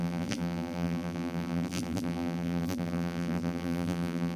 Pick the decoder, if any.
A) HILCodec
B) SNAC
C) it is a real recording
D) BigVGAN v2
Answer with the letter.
D